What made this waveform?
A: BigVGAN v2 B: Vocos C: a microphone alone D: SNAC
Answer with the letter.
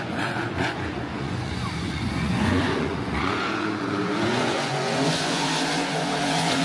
B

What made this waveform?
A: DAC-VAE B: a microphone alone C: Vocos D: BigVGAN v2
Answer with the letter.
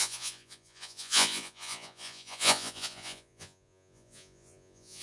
C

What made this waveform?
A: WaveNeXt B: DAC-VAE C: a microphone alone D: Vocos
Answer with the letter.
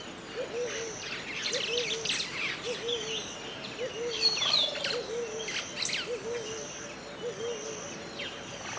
C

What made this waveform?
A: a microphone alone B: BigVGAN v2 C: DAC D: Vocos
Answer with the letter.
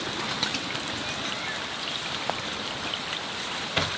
A